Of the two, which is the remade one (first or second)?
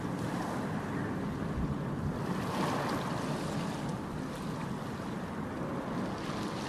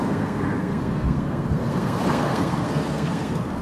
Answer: second